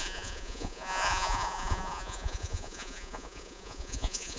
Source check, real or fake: fake